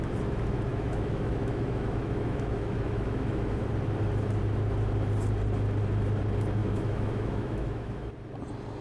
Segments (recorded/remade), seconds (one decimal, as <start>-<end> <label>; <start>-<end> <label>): 0.0-0.7 recorded; 0.7-3.7 remade; 3.7-6.6 recorded; 6.6-8.1 remade; 8.1-8.8 recorded